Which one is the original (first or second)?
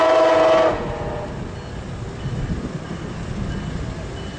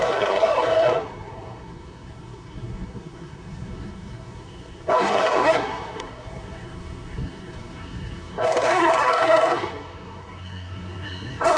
first